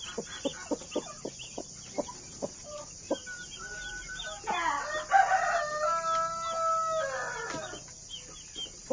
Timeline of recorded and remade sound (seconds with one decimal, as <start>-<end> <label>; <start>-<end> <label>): 0.0-8.9 recorded

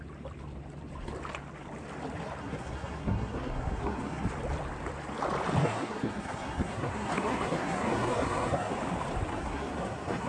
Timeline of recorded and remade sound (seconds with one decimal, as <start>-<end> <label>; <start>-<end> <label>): 0.0-2.4 recorded; 2.4-4.3 remade; 4.3-5.6 recorded; 5.6-8.7 remade; 8.7-9.3 recorded; 9.3-10.3 remade

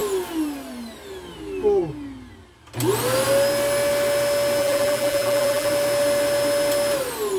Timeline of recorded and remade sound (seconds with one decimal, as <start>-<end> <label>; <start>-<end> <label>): 0.0-4.6 recorded; 4.6-5.7 remade; 5.7-7.4 recorded

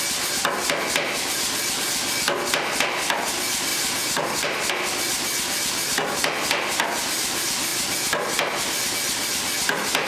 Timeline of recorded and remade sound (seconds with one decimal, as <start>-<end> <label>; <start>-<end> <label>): 0.0-3.7 recorded; 3.7-4.7 remade; 4.7-10.1 recorded